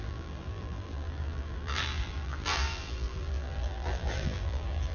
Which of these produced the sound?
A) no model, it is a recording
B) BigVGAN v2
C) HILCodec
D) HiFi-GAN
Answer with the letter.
B